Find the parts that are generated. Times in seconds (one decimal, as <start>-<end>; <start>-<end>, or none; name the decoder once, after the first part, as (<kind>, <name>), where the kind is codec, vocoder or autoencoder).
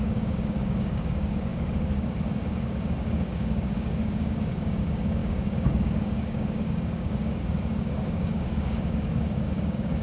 0.0-10.0 (codec, DAC)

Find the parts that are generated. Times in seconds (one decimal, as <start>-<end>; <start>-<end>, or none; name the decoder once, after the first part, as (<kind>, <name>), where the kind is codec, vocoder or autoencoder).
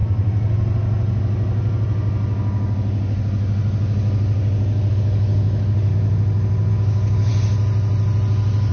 4.9-5.9 (codec, DAC); 6.7-7.3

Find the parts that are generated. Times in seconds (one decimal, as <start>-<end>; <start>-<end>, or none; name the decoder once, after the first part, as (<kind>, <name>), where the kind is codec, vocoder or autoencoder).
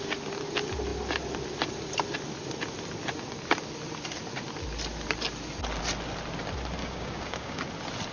6.8-7.6 (codec, DAC)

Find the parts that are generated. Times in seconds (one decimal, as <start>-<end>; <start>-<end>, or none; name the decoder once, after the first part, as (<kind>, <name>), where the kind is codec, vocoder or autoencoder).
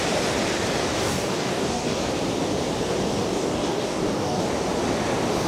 0.8-2.1 (codec, DAC); 3.2-4.5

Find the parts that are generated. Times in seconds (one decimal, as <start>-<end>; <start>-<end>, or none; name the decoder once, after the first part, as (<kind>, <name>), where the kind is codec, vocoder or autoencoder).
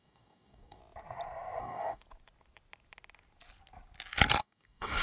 0.0-0.8 (codec, DAC); 1.6-2.0; 4.4-5.0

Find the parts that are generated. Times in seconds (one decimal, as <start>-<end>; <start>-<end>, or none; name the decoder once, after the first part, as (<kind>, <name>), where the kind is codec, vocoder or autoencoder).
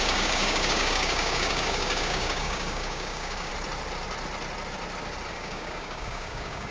0.0-3.5 (codec, DAC); 5.3-6.7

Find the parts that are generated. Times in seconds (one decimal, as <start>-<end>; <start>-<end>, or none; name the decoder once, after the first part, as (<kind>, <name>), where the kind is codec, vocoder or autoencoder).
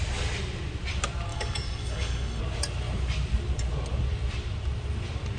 1.3-2.4 (codec, DAC)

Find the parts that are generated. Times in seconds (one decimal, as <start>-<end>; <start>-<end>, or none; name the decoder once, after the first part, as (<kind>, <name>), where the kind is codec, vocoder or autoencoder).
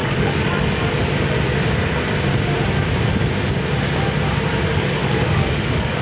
0.0-1.3 (codec, DAC); 4.7-6.0